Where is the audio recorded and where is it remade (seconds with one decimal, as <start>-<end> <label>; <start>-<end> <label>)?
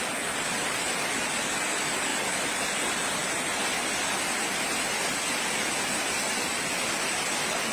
0.0-7.7 recorded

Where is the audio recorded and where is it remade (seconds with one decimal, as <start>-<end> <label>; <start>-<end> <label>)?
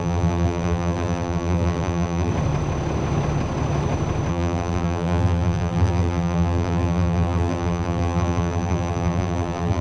0.0-2.3 remade; 2.3-4.3 recorded; 4.3-9.8 remade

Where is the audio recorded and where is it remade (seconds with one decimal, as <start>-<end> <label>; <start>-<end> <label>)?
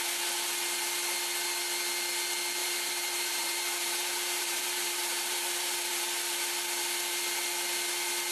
0.0-2.6 recorded; 2.6-5.9 remade; 5.9-8.3 recorded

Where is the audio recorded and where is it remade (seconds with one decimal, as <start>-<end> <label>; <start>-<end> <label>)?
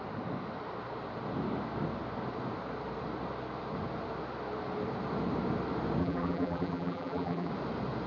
0.0-6.0 recorded; 6.0-7.5 remade; 7.5-8.1 recorded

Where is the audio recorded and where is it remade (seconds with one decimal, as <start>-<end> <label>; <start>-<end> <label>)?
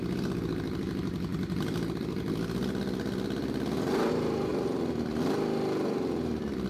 0.0-1.3 recorded; 1.3-4.1 remade; 4.1-4.5 recorded; 4.5-6.7 remade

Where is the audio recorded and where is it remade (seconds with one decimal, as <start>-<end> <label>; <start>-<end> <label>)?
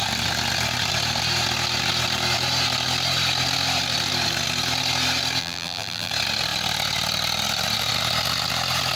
0.0-5.4 recorded; 5.4-6.1 remade; 6.1-9.0 recorded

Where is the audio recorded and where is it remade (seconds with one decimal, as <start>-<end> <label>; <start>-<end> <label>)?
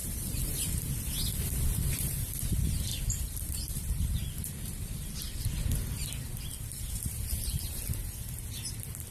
0.0-2.4 remade; 2.4-2.9 recorded; 2.9-5.4 remade; 5.4-9.1 recorded